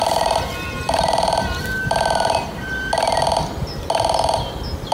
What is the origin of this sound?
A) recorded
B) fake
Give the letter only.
A